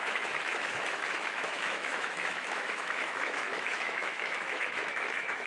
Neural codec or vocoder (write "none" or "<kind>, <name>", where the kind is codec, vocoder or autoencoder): autoencoder, DAC-VAE